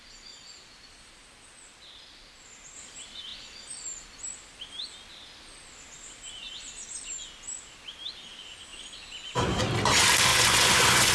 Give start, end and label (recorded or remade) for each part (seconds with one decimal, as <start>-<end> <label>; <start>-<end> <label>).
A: 0.0-10.3 recorded; 10.3-11.1 remade